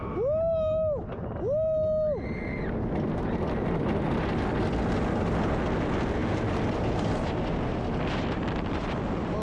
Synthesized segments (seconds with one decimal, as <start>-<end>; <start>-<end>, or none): none